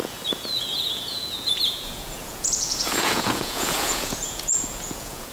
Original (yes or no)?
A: no